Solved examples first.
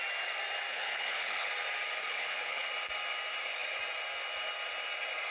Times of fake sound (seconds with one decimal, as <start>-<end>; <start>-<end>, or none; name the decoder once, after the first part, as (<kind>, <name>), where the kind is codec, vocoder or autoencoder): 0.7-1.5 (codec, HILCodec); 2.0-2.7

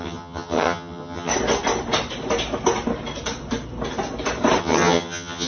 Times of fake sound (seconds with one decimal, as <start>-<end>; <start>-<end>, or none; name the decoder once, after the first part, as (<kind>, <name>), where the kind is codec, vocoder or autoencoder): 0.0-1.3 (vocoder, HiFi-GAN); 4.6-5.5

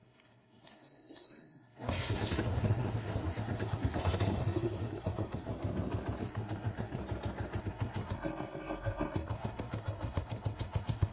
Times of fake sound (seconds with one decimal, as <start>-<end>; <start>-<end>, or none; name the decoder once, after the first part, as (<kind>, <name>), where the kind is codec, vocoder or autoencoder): 0.0-5.5 (codec, SNAC); 6.2-7.0; 7.6-11.1